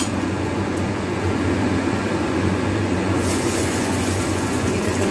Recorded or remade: remade